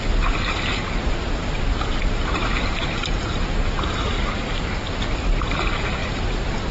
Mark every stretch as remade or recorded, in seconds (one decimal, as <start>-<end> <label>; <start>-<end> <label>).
0.0-0.7 recorded; 0.7-4.7 remade; 4.7-6.0 recorded; 6.0-6.7 remade

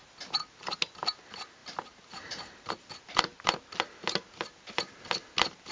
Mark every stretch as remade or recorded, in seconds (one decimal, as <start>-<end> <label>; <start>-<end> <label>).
0.0-1.6 recorded; 1.6-2.7 remade; 2.7-5.7 recorded

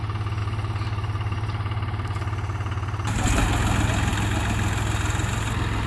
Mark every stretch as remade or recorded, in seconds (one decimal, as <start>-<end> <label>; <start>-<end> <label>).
0.0-0.4 recorded; 0.4-3.4 remade; 3.4-5.9 recorded

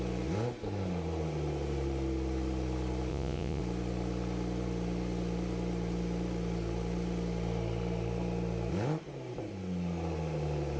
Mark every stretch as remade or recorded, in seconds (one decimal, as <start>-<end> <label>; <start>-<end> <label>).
0.0-3.1 recorded; 3.1-3.6 remade; 3.6-10.8 recorded

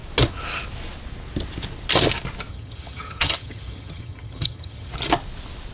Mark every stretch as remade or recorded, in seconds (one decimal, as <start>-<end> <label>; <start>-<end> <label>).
0.0-2.5 recorded; 2.5-4.9 remade; 4.9-5.7 recorded